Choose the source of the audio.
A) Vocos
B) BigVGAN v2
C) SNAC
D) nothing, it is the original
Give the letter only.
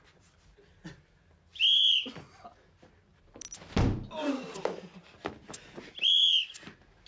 D